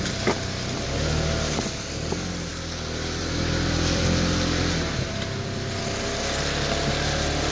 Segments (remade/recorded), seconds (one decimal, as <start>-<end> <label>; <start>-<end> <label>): 0.0-7.5 recorded